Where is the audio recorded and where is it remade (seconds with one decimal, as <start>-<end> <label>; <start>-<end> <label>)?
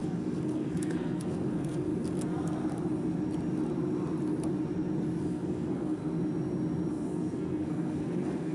0.0-1.9 remade; 1.9-5.2 recorded; 5.2-6.0 remade; 6.0-6.9 recorded; 6.9-8.5 remade